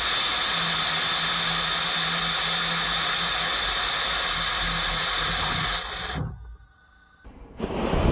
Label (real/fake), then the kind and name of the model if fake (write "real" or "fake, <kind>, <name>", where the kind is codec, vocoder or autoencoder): real